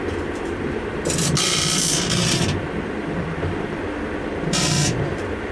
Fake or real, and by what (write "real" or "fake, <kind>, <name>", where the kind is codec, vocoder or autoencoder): fake, vocoder, BigVGAN v2